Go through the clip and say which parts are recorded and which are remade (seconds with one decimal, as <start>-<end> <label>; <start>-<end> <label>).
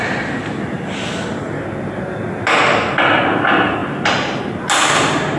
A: 0.0-5.4 recorded